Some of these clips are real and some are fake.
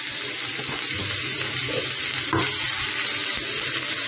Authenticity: real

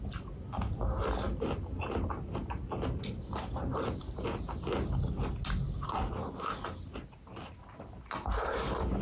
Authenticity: real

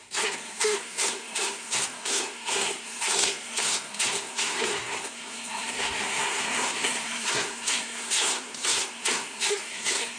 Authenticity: fake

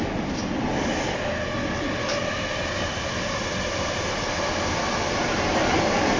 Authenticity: real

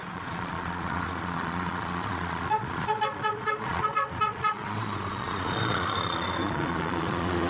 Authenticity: fake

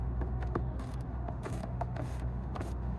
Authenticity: fake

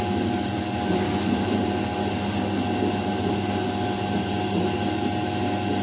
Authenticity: real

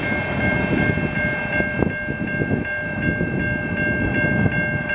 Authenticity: real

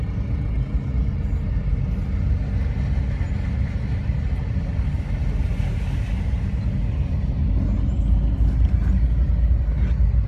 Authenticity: real